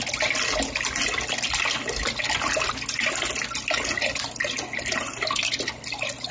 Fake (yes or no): no